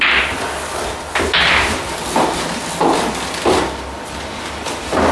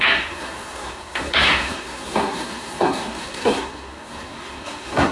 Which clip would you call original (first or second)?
first